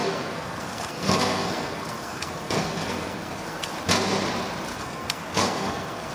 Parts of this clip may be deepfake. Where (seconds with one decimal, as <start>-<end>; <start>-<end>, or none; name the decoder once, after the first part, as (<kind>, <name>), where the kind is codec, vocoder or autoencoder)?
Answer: 0.0-3.7 (codec, SNAC); 4.7-6.1